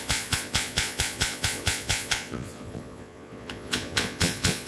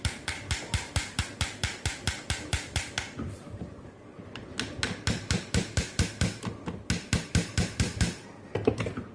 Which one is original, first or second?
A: second